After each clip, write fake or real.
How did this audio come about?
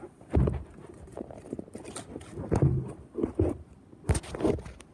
real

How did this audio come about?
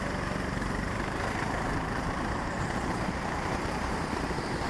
fake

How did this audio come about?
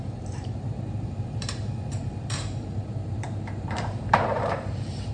fake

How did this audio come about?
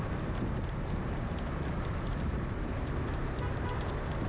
fake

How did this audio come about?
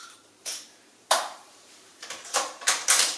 fake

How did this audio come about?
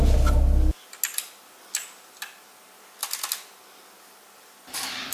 real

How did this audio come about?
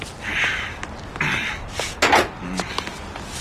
real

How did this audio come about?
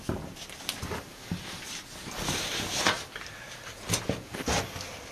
real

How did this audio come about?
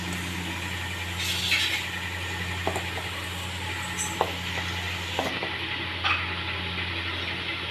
real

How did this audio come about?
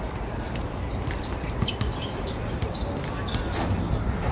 real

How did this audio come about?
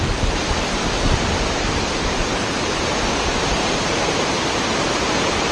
fake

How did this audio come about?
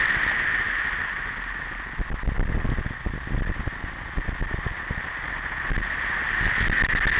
real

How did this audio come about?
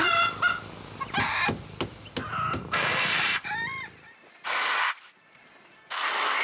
real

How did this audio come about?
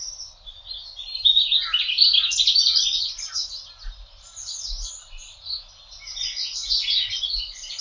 real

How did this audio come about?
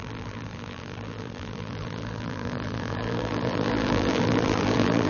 fake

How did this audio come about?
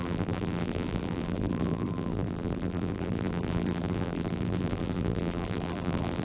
fake